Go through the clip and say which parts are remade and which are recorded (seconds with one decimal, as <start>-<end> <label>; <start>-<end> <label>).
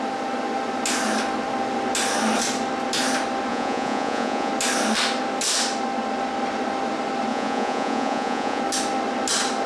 0.0-3.5 recorded; 3.5-4.5 remade; 4.5-7.3 recorded; 7.3-8.6 remade; 8.6-9.7 recorded